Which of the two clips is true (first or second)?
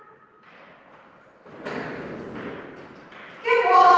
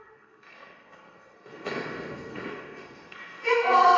first